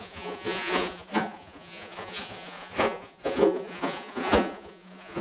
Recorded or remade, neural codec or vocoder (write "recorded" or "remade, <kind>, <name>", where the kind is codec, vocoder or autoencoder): remade, vocoder, Vocos